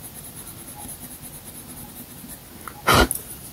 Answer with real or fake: real